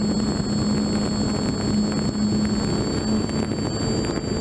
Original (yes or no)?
yes